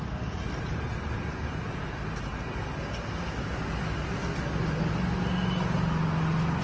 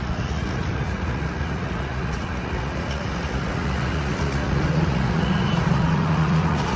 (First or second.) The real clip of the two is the first